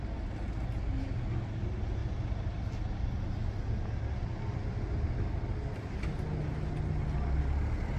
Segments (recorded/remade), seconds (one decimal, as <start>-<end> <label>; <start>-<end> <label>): 0.0-8.0 recorded